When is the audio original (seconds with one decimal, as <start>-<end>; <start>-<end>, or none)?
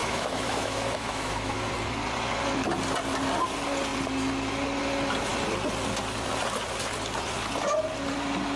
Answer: 1.7-8.6